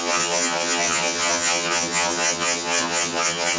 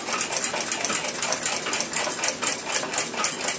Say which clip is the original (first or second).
second